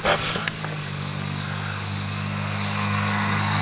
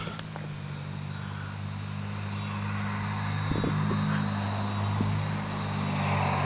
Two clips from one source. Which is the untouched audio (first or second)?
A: second